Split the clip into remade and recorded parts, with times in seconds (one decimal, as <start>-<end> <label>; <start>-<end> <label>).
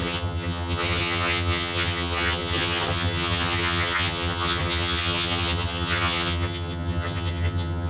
0.0-7.9 remade